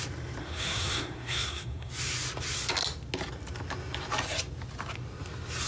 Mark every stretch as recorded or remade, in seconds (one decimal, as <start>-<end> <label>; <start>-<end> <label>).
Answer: 0.0-0.4 recorded; 0.4-1.9 remade; 1.9-5.7 recorded